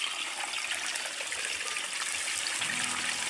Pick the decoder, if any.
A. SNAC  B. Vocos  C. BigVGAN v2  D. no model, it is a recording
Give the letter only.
D